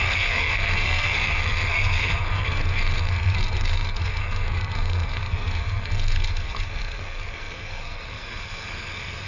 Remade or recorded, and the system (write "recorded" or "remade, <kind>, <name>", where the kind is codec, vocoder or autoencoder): remade, codec, SNAC